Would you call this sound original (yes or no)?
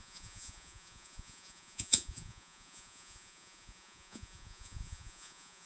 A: no